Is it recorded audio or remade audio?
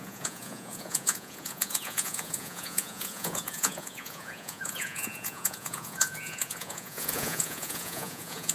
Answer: remade